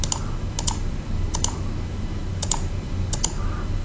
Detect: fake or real real